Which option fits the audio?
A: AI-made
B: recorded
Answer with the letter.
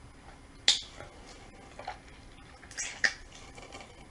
B